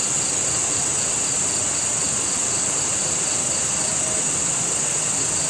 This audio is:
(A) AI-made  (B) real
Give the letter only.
B